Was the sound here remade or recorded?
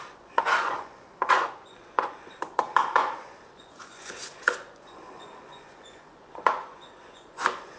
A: remade